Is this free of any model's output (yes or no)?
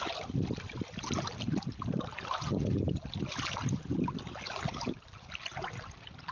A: yes